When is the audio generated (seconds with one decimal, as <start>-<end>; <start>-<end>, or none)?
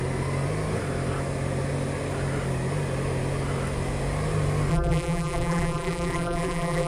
4.7-6.9